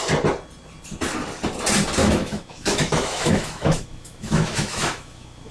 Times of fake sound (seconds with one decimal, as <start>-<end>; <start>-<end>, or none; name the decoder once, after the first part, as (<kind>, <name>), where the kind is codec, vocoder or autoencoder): 2.0-5.5 (autoencoder, DAC-VAE)